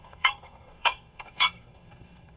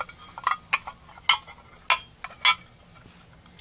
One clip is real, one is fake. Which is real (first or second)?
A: second